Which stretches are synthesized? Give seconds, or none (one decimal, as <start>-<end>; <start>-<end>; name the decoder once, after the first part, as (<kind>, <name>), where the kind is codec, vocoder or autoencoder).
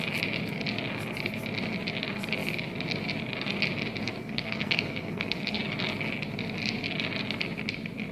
4.1-5.6 (codec, SNAC)